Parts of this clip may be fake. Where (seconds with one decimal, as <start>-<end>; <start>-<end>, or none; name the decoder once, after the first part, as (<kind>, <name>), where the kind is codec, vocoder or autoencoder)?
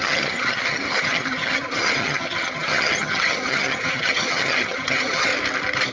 0.0-5.3 (vocoder, HiFi-GAN)